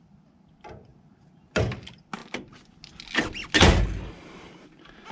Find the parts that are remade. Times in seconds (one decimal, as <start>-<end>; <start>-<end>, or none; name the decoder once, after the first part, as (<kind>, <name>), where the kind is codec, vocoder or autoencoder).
0.9-1.7 (vocoder, BigVGAN v2)